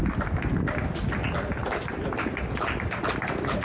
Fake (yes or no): no